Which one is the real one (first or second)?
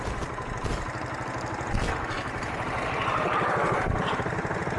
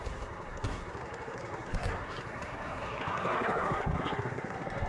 first